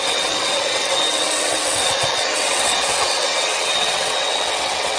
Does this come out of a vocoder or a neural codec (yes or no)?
yes